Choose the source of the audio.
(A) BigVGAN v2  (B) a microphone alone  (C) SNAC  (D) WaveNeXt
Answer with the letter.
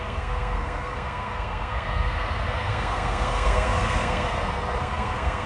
C